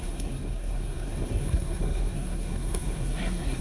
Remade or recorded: remade